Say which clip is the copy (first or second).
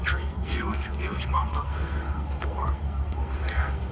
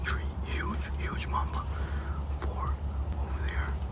first